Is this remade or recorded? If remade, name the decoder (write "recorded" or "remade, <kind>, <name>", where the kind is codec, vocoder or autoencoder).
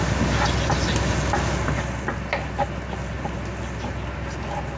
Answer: recorded